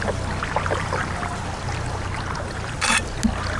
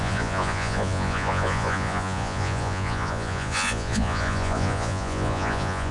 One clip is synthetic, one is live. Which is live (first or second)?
first